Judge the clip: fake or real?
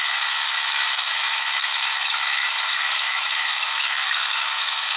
fake